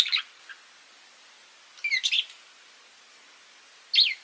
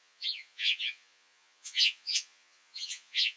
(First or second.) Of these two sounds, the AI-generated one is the second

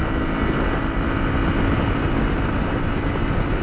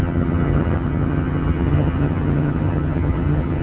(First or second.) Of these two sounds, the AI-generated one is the second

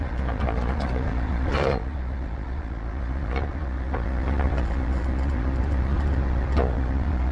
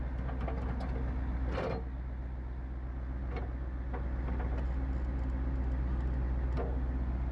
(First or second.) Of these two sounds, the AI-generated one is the first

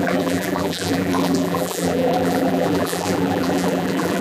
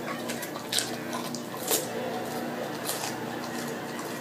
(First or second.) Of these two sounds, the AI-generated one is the first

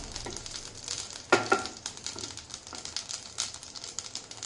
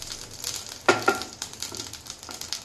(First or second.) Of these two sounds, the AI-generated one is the first